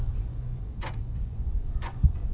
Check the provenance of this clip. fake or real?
fake